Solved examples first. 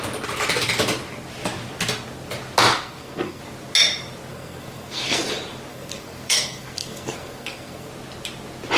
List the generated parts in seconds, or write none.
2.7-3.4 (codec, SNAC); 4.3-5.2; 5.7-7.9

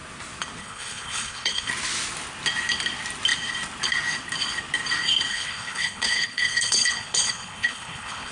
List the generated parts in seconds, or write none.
0.6-1.7 (codec, HILCodec); 5.3-8.3

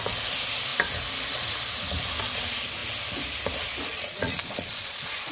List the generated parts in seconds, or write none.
3.9-5.3 (vocoder, Vocos)

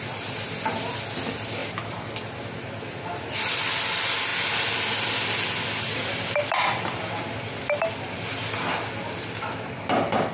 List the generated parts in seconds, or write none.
none

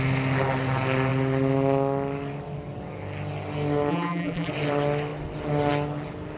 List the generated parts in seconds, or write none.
3.9-4.5 (vocoder, BigVGAN v2)

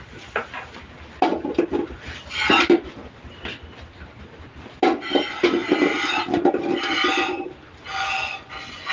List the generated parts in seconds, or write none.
7.9-8.9 (vocoder, Vocos)